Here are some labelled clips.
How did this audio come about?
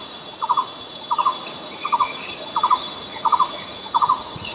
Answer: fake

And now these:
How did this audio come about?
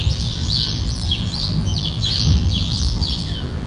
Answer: fake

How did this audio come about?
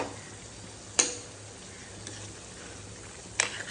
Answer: real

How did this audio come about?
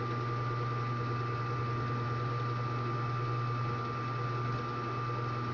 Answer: real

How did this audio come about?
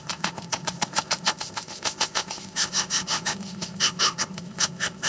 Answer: fake